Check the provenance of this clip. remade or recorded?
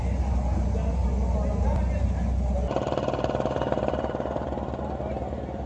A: recorded